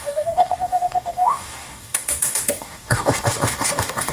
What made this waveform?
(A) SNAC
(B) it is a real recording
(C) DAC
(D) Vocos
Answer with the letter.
C